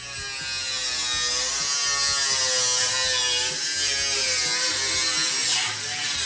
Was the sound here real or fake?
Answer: real